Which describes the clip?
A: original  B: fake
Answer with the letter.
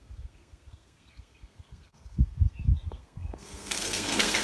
B